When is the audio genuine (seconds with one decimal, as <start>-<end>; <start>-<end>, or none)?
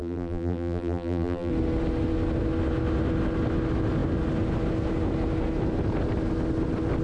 1.5-7.0